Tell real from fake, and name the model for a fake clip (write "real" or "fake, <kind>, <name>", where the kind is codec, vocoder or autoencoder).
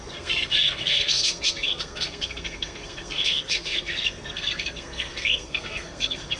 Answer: fake, codec, SNAC